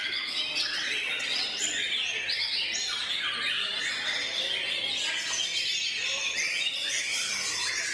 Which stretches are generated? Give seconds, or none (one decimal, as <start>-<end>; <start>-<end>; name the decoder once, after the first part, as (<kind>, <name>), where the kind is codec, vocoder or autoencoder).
0.0-1.8 (vocoder, WaveNeXt)

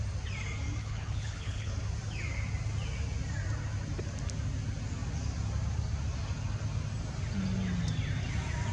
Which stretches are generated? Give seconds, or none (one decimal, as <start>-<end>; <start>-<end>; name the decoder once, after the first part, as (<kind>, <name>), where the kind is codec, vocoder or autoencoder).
0.8-1.7 (codec, HILCodec)

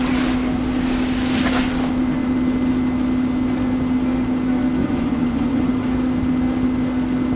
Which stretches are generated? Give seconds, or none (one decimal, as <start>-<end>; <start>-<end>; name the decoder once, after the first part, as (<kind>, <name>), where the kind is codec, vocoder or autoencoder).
4.8-5.7 (vocoder, Vocos)

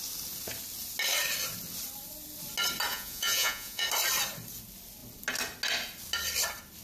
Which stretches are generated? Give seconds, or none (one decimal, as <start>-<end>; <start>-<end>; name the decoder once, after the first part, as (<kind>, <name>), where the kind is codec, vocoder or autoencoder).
2.9-3.8 (vocoder, Vocos)

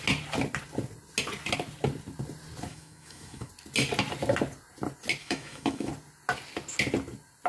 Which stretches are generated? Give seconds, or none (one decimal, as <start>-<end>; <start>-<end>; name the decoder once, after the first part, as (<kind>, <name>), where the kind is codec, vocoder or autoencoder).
2.7-3.5 (autoencoder, DAC-VAE); 5.2-5.9